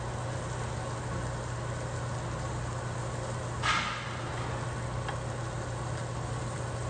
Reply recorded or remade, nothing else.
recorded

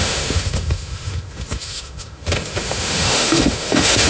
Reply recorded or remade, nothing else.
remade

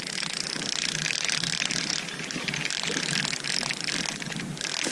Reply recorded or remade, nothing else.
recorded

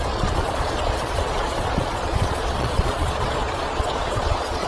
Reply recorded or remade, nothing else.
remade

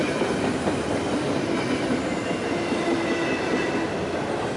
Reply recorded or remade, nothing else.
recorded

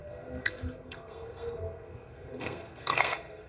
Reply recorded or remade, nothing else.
remade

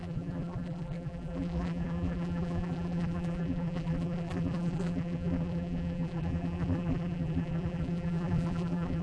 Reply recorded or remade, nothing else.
remade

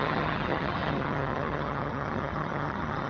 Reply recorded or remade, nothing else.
remade